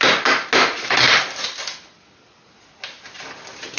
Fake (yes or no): no